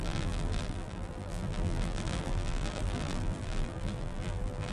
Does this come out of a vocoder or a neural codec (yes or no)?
yes